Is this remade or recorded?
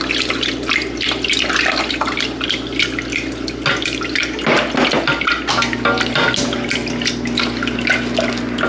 recorded